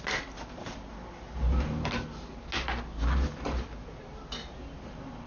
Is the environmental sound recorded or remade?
recorded